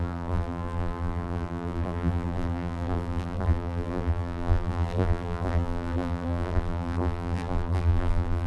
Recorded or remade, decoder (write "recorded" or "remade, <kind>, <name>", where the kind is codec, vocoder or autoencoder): remade, vocoder, BigVGAN v2